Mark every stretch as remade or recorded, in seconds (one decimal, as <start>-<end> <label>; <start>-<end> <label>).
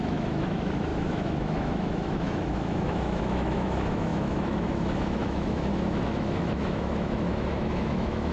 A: 0.0-8.3 remade